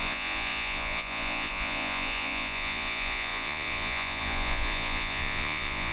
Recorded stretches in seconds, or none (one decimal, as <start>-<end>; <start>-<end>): none